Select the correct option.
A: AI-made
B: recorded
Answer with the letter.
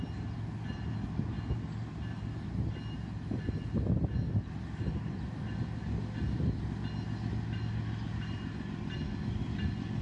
B